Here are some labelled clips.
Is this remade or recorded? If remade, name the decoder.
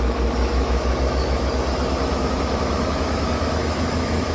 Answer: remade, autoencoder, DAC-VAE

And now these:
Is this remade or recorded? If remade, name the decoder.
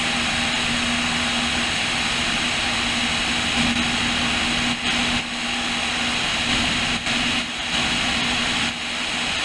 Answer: recorded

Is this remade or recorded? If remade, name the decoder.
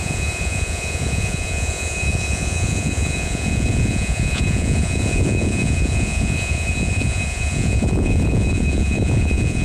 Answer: remade, vocoder, Vocos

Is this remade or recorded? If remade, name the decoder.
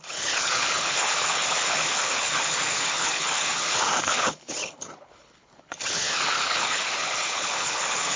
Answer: remade, codec, HILCodec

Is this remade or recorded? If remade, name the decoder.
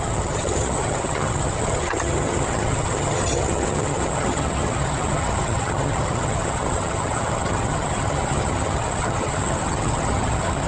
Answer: remade, vocoder, HiFi-GAN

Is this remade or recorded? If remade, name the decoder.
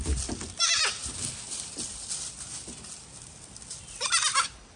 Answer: recorded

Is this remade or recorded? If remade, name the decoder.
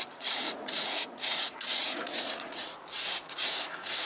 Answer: remade, vocoder, Vocos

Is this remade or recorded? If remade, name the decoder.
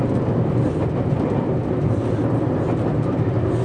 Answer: recorded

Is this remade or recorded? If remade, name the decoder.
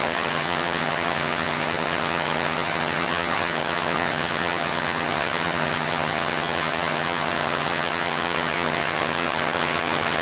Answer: remade, vocoder, HiFi-GAN